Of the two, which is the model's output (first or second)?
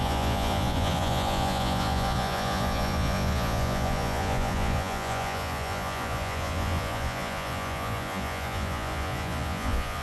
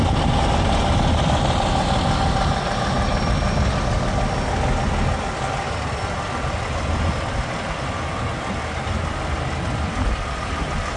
first